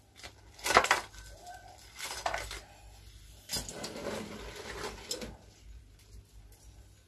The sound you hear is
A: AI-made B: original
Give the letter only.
B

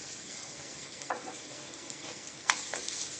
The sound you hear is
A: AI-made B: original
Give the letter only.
A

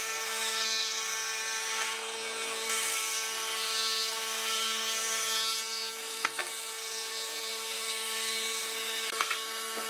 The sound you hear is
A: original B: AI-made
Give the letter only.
B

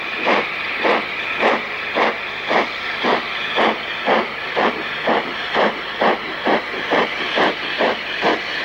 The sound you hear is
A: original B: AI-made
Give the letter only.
A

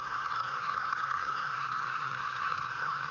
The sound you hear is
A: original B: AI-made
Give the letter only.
B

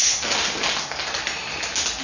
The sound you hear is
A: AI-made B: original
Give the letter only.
B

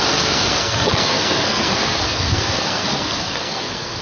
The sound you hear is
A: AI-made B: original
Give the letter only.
A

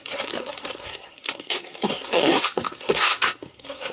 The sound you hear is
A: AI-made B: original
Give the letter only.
A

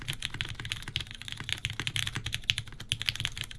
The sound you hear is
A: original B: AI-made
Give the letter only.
A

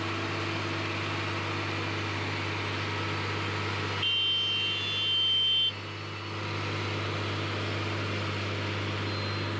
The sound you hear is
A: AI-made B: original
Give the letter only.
B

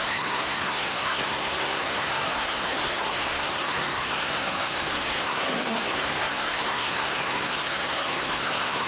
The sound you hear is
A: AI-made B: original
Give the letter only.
A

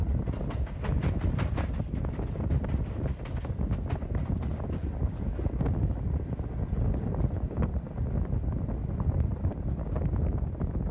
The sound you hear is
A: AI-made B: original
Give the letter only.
B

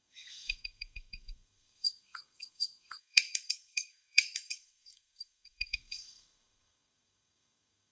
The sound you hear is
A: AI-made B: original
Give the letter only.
A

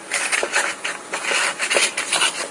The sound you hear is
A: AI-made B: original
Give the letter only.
B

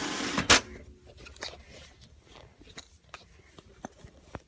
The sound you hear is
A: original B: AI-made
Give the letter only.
A